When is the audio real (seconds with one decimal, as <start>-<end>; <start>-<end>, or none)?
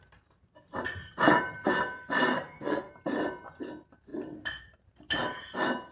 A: 0.0-2.3; 2.9-5.9